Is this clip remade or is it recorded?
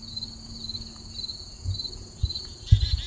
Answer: remade